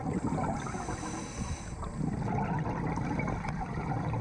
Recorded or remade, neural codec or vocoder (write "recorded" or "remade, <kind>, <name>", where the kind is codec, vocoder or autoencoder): recorded